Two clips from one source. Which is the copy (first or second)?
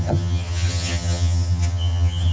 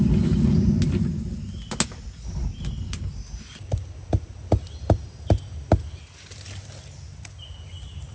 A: first